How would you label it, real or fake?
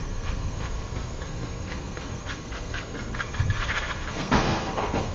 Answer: fake